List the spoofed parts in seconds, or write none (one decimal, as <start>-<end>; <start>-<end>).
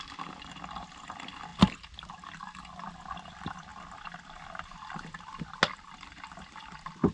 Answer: none